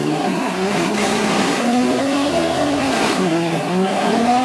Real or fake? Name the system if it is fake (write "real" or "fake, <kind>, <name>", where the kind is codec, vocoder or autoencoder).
fake, codec, SNAC